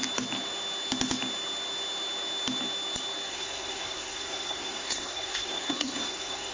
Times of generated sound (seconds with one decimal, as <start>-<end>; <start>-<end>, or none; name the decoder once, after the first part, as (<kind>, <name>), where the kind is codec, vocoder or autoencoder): 3.3-6.5 (codec, SNAC)